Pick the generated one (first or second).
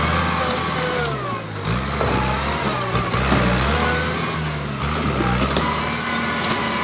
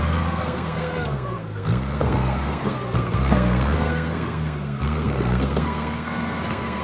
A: second